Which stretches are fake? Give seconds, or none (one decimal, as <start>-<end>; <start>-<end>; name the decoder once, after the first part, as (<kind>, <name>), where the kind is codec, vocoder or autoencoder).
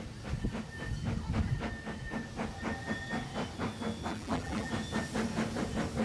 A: 4.1-4.7 (vocoder, BigVGAN v2)